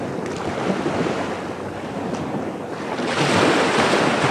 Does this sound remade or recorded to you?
recorded